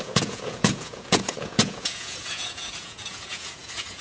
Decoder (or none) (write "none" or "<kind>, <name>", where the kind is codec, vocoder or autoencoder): vocoder, Vocos